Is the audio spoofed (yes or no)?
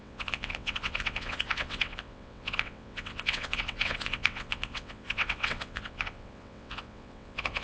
yes